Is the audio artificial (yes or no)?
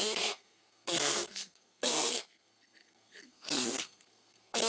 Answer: yes